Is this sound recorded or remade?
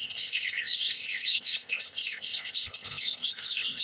remade